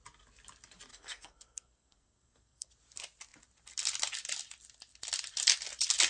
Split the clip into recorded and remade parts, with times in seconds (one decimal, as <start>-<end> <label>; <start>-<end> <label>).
0.0-0.9 recorded; 0.9-2.7 remade; 2.7-6.1 recorded